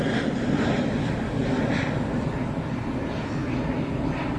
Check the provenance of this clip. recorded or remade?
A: recorded